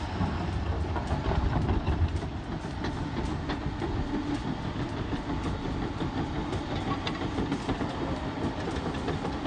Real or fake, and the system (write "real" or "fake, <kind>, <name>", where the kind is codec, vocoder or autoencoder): real